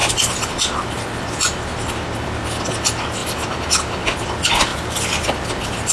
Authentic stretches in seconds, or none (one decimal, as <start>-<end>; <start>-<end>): 1.0-4.7; 5.2-5.9